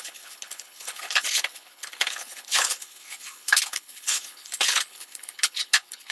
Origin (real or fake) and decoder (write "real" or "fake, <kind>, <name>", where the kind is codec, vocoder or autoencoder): fake, codec, HILCodec